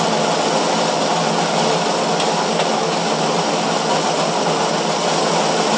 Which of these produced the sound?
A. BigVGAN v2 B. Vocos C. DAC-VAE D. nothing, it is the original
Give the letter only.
D